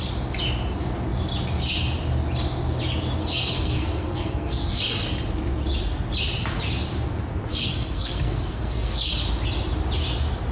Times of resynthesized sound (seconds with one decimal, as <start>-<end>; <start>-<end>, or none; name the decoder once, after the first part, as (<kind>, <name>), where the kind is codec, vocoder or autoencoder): 3.2-4.8 (codec, SNAC); 7.5-9.1